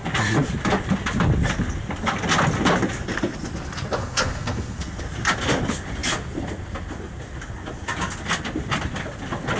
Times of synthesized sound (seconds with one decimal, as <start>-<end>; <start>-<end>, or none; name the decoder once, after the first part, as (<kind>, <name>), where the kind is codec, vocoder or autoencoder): 4.0-5.0 (codec, SNAC)